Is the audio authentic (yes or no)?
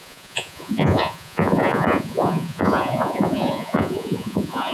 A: no